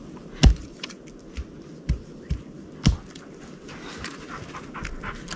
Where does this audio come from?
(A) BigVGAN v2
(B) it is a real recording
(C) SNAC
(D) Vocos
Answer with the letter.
B